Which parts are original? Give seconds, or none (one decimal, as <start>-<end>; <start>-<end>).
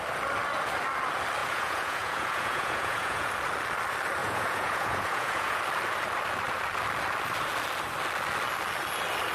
0.0-1.4; 3.3-4.2; 5.6-9.3